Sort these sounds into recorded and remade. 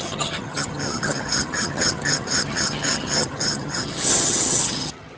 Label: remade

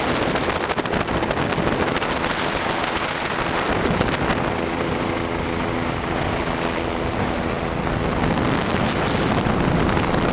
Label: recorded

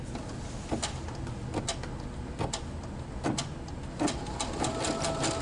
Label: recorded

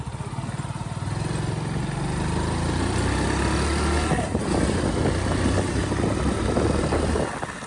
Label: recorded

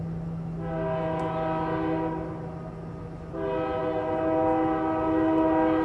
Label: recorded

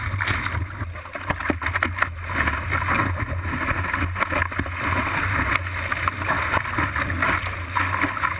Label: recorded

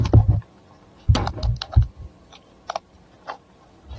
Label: remade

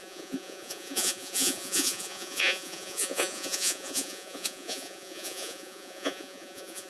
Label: remade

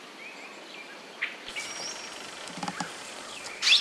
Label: recorded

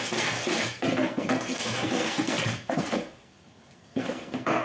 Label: remade